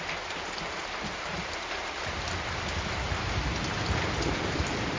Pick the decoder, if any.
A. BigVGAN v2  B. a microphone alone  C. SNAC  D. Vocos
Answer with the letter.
B